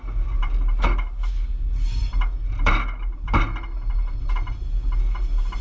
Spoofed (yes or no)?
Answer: no